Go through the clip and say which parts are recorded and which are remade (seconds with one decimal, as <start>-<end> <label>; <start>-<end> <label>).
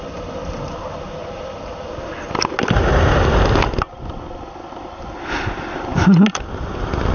0.0-7.1 recorded